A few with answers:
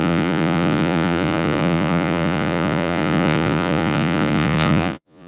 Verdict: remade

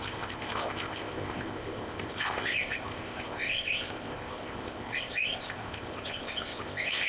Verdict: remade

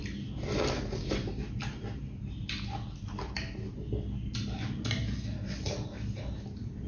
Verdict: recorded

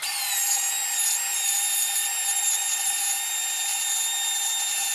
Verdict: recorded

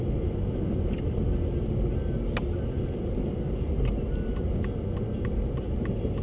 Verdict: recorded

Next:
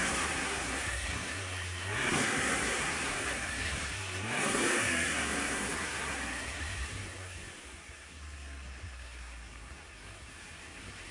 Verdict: remade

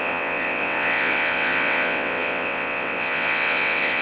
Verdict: remade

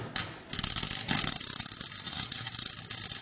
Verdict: recorded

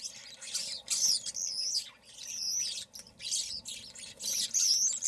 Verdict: recorded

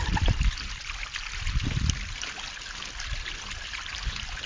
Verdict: recorded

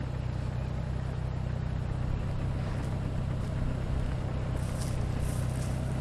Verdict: recorded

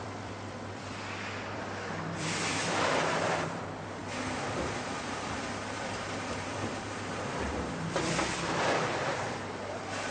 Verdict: remade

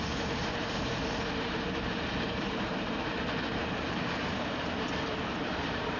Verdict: remade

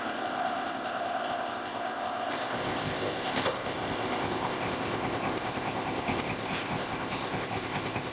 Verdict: remade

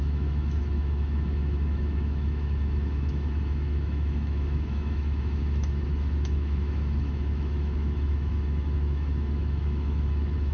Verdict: remade